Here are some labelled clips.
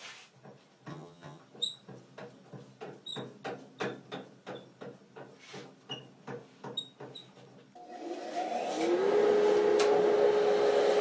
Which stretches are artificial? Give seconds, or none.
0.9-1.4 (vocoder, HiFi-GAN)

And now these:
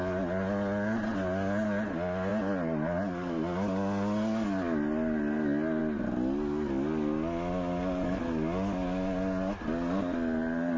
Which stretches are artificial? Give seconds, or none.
none

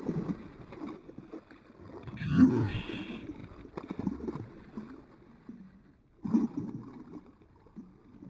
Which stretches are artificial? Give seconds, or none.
1.8-2.5 (vocoder, HiFi-GAN)